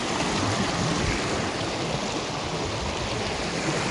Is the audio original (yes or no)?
yes